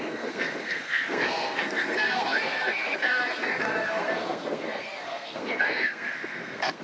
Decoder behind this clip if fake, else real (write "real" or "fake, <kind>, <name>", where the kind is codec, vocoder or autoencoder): fake, codec, SNAC